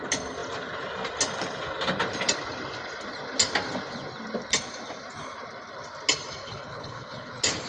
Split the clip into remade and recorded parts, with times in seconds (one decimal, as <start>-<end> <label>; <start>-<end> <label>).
0.0-6.4 recorded; 6.4-7.3 remade; 7.3-7.7 recorded